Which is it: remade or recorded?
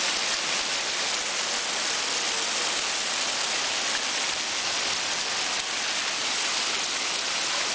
recorded